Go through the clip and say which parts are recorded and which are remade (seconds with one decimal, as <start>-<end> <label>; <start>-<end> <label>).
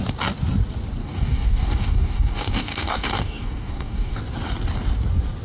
0.0-1.0 recorded; 1.0-4.2 remade; 4.2-5.4 recorded